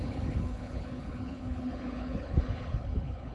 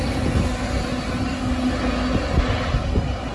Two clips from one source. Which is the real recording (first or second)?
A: second